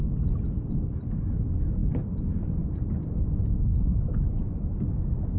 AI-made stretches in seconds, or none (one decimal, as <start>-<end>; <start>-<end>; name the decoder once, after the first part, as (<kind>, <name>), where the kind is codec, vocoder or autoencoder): none